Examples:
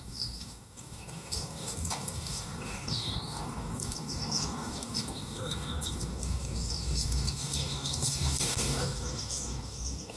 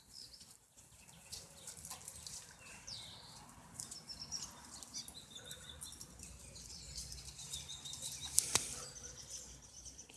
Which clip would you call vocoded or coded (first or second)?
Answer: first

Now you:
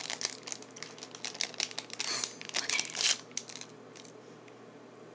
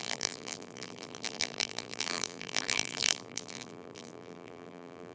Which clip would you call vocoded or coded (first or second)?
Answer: second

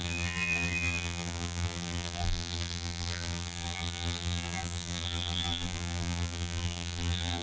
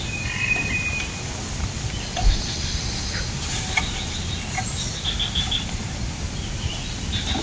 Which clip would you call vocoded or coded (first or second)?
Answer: first